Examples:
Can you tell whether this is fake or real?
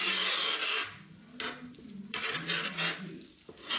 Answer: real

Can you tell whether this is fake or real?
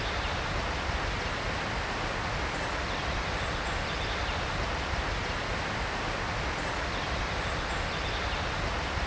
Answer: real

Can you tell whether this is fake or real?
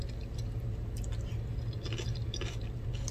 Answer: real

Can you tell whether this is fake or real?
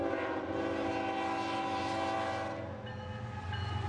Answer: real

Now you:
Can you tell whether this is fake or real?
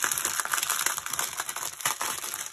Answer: real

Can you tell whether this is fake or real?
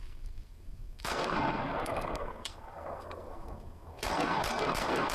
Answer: fake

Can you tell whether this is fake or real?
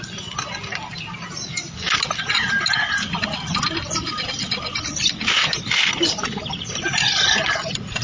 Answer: real